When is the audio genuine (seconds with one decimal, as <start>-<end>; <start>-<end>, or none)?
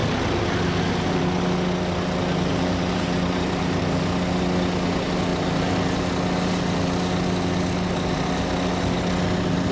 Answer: 0.0-2.5; 3.8-9.7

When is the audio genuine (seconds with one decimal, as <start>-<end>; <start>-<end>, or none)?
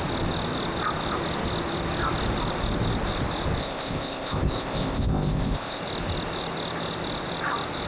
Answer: 0.0-3.6; 5.8-7.9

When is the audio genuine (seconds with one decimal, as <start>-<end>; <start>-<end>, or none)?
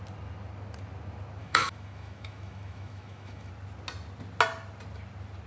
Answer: 0.0-1.4; 3.5-5.5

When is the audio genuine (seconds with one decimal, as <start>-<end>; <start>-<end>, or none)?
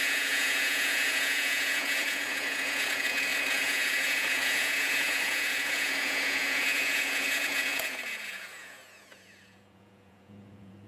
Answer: none